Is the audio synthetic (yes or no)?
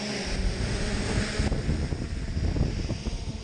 no